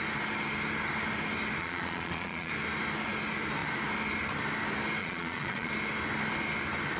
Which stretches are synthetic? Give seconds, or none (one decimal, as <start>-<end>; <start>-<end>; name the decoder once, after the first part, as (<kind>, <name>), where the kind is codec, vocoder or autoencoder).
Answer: 1.6-2.5 (vocoder, Vocos); 5.0-5.7